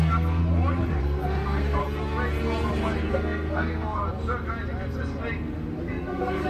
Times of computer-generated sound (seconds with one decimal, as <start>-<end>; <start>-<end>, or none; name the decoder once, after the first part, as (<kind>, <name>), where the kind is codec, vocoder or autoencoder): 0.0-0.4 (codec, SNAC); 1.0-1.8; 3.1-4.0; 5.8-6.5